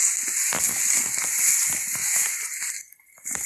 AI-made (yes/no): no